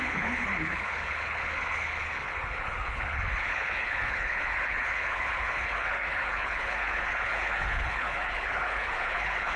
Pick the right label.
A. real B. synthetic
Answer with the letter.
B